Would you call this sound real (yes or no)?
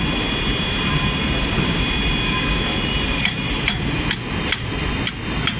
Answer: yes